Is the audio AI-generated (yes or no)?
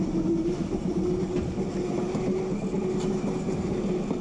no